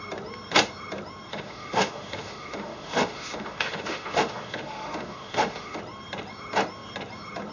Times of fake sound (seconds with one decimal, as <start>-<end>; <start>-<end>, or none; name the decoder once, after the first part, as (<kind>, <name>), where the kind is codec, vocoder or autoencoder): 1.3-5.8 (autoencoder, DAC-VAE)